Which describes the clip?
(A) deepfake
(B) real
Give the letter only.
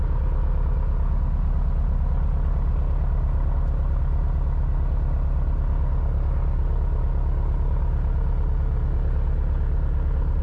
B